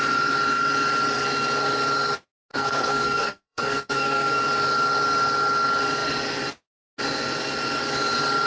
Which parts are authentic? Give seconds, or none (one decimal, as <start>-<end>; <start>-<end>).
0.0-2.5; 4.4-8.5